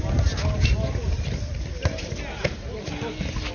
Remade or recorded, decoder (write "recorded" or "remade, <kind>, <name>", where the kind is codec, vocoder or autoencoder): recorded